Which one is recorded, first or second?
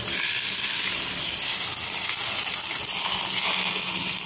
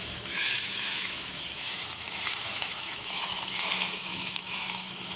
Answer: first